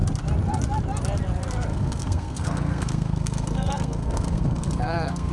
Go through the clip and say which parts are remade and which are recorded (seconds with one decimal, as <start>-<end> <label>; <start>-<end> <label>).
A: 0.0-1.7 recorded; 1.7-5.3 remade

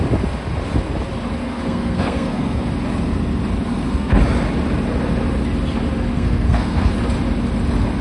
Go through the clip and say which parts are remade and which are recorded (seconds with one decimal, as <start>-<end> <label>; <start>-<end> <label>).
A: 0.0-1.4 recorded; 1.4-2.7 remade; 2.7-3.7 recorded; 3.7-4.2 remade; 4.2-6.1 recorded; 6.1-6.9 remade; 6.9-8.0 recorded

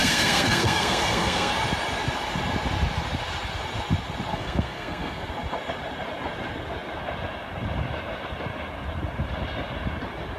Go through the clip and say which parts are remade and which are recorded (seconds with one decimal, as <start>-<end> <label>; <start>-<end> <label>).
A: 0.0-1.5 remade; 1.5-4.3 recorded; 4.3-5.3 remade; 5.3-10.4 recorded

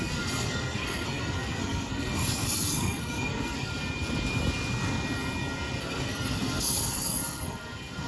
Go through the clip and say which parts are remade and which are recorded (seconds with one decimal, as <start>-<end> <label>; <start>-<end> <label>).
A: 0.0-3.7 remade; 3.7-5.8 recorded; 5.8-8.1 remade

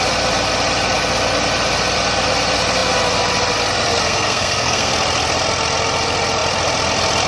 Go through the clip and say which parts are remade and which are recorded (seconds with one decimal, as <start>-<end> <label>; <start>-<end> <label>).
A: 0.0-4.0 recorded; 4.0-4.9 remade; 4.9-7.3 recorded